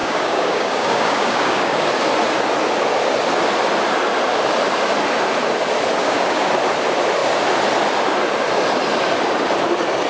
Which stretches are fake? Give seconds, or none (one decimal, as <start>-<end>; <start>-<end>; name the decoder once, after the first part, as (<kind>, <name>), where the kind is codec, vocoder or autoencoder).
0.0-1.9 (codec, DAC); 6.0-6.5